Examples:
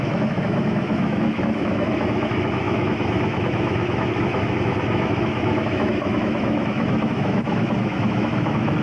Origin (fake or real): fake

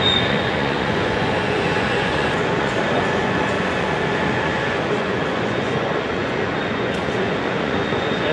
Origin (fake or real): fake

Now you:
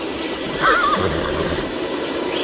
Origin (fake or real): fake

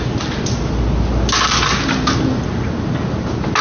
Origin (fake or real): real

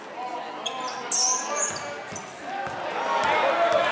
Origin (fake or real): real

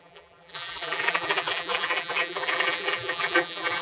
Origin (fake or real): fake